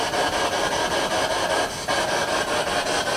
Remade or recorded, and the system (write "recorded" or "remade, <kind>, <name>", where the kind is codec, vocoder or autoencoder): recorded